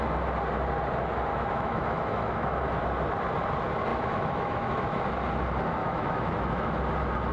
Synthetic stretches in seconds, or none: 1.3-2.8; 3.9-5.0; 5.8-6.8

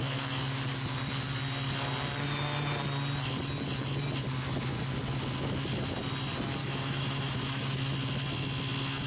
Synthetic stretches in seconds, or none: 6.6-7.8

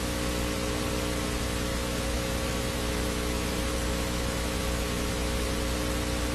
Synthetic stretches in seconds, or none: 1.7-5.5

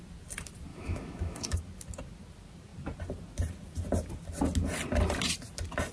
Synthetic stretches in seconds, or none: 0.7-1.6